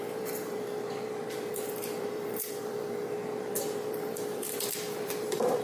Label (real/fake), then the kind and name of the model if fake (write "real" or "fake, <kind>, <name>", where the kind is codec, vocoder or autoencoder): fake, vocoder, BigVGAN v2